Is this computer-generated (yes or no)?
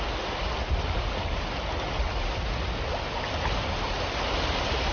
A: no